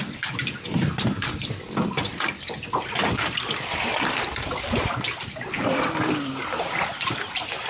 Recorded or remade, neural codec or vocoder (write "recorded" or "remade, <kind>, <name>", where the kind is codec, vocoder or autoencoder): recorded